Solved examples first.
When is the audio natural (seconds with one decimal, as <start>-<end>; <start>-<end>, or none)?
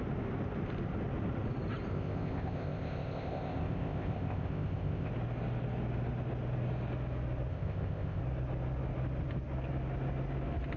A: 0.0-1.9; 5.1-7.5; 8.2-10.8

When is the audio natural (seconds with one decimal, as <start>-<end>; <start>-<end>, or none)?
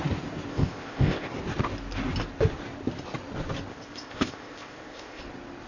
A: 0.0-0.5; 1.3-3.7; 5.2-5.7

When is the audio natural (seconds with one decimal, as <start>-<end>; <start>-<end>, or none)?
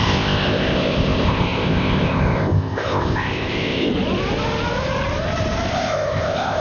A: 3.9-5.7